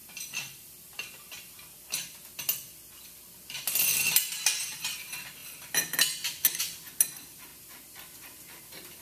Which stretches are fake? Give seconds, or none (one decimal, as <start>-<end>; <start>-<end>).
0.0-0.9